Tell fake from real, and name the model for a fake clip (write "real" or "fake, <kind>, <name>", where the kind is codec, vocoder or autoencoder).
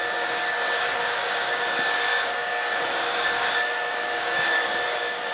fake, codec, DAC